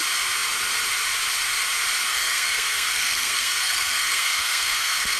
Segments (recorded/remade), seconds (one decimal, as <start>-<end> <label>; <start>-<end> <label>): 0.0-2.1 recorded; 2.1-5.2 remade